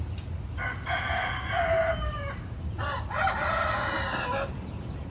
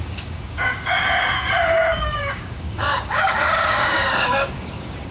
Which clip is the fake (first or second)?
second